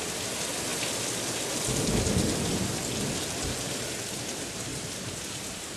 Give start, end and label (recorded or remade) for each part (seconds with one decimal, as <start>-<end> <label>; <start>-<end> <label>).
0.0-4.7 recorded; 4.7-5.2 remade; 5.2-5.8 recorded

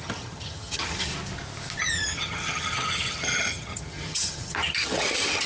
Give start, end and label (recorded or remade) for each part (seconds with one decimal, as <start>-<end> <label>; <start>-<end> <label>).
0.0-1.1 remade; 1.1-1.8 recorded; 1.8-5.5 remade

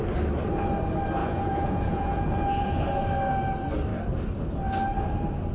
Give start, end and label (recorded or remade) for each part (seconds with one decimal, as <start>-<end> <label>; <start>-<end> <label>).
0.0-1.2 recorded; 1.2-3.0 remade; 3.0-5.5 recorded